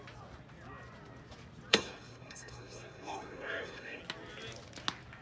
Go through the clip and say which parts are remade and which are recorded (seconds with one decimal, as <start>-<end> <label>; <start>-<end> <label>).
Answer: 0.0-1.7 recorded; 1.7-4.0 remade; 4.0-5.2 recorded